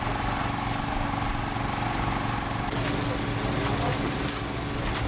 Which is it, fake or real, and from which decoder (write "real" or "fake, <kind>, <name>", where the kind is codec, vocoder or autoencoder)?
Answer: real